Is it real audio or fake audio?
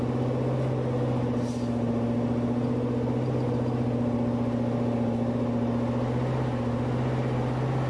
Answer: real